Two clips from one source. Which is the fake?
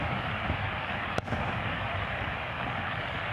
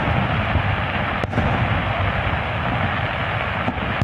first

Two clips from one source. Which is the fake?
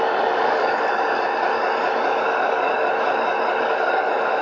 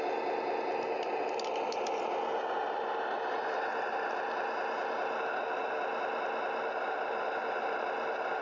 first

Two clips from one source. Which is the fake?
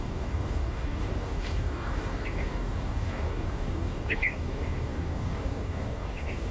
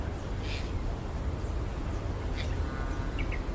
first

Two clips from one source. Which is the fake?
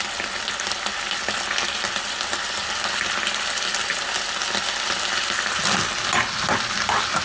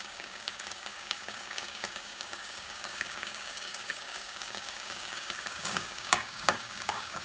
second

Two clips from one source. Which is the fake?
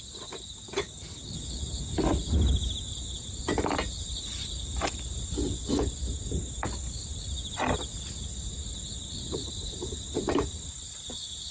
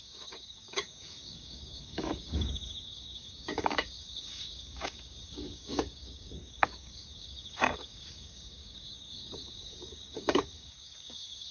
second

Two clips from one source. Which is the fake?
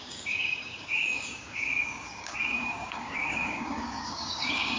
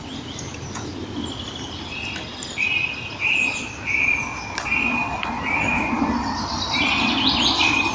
first